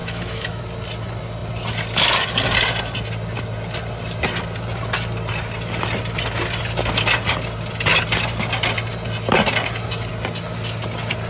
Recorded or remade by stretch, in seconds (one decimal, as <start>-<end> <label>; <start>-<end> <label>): 0.0-0.6 remade; 0.6-11.3 recorded